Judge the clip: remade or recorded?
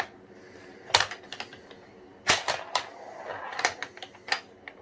recorded